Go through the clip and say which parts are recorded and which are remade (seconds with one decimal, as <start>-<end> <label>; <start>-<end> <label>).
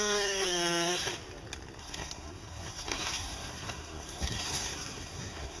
0.0-1.1 remade; 1.1-1.8 recorded; 1.8-5.6 remade